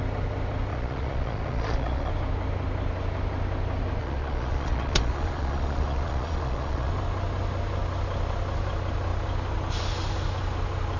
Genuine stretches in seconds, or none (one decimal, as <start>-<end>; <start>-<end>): 0.0-0.7; 2.1-4.0; 6.9-11.0